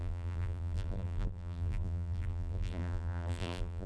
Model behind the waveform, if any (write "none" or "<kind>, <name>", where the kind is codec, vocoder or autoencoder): vocoder, BigVGAN v2